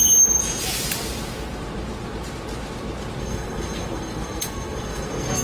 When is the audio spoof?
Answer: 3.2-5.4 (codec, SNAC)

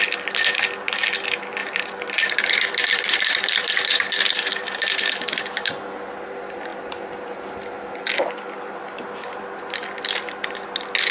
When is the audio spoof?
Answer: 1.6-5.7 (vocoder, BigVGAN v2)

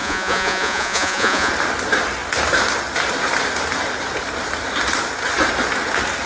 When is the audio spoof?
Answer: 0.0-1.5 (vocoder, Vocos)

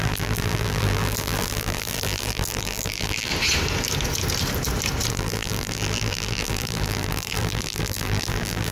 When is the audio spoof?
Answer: 0.0-3.3 (vocoder, BigVGAN v2); 5.1-8.7

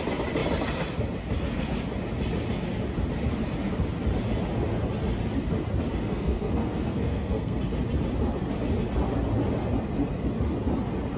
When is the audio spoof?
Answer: 6.0-7.6 (codec, SNAC)

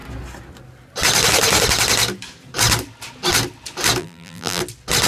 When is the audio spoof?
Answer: 4.0-4.6 (vocoder, BigVGAN v2)

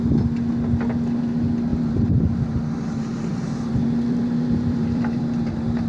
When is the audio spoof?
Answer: 1.7-5.2 (vocoder, BigVGAN v2)